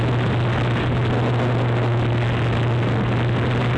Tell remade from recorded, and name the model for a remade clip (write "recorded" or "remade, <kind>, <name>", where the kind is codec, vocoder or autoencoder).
recorded